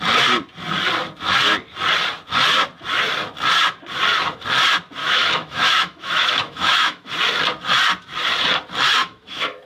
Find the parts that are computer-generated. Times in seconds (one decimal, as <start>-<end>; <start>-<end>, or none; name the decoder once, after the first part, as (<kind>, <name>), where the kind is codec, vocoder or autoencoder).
5.0-7.1 (autoencoder, DAC-VAE); 9.0-9.7